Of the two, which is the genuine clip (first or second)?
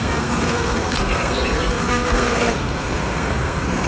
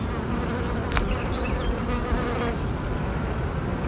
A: second